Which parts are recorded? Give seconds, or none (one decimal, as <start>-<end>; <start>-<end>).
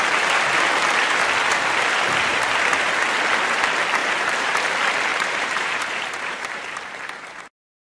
0.0-2.3; 2.9-4.0; 4.5-5.1; 7.4-7.9